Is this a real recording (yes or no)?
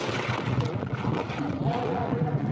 no